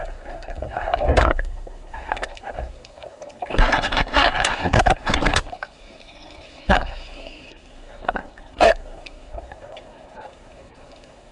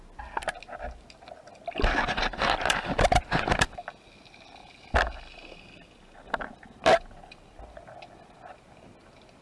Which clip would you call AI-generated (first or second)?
first